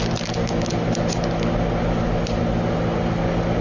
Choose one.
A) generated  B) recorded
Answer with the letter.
B